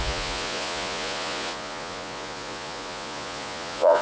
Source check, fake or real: fake